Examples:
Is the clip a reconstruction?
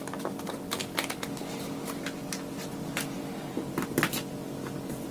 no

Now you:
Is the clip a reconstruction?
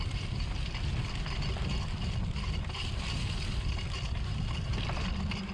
no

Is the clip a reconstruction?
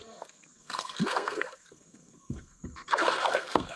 yes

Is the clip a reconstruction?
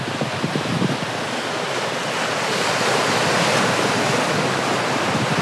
no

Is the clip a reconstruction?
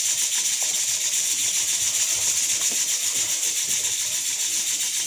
no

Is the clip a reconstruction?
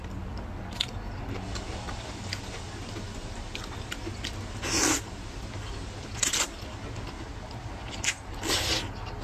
no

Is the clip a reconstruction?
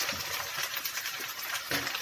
no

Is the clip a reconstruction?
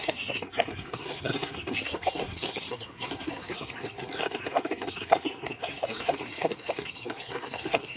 yes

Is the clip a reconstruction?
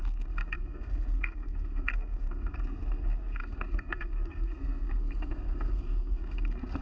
yes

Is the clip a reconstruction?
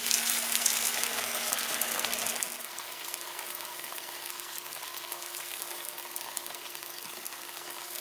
yes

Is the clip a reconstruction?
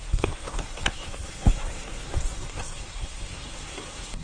yes